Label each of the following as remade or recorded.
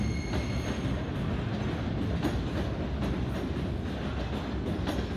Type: recorded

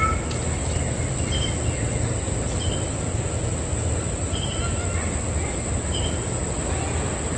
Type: recorded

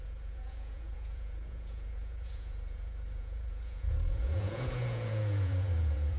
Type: remade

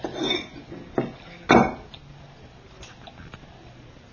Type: recorded